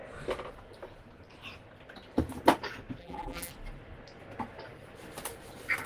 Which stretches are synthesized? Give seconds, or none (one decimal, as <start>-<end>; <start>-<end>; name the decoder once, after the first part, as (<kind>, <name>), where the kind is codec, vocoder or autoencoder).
3.0-3.5 (vocoder, BigVGAN v2)